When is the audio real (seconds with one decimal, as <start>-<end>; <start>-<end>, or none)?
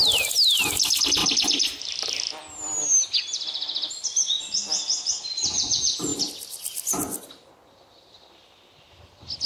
0.0-9.5